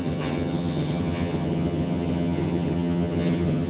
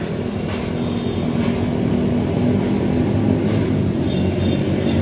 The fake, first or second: first